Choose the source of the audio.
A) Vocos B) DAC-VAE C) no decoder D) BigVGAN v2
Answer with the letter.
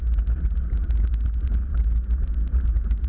C